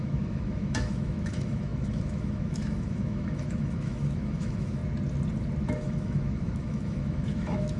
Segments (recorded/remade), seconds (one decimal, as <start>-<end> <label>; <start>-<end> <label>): 0.0-4.8 remade; 4.8-5.6 recorded; 5.6-7.8 remade